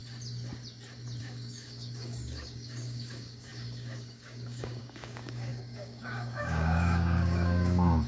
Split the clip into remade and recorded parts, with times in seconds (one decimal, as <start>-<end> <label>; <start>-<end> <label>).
0.0-1.2 recorded; 1.2-8.1 remade